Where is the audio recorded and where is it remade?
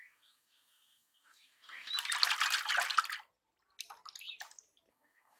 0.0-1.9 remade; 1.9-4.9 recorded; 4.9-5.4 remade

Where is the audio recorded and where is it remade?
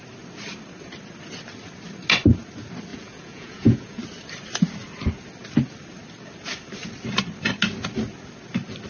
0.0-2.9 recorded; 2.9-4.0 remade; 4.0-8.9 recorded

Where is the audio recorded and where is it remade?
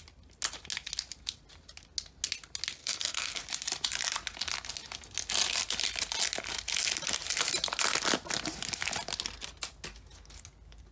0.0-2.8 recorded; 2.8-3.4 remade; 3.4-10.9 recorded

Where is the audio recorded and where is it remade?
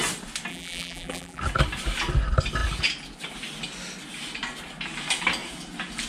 0.0-0.5 recorded; 0.5-1.4 remade; 1.4-6.1 recorded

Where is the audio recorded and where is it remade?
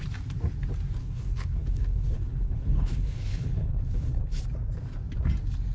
0.0-1.0 recorded; 1.0-4.4 remade; 4.4-5.7 recorded